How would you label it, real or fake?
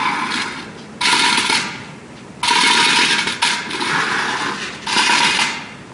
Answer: real